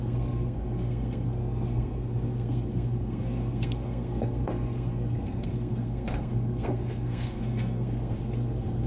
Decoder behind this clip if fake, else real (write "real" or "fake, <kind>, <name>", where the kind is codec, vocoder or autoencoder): fake, codec, SNAC